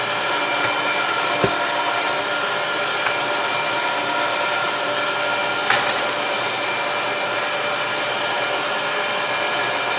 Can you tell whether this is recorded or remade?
recorded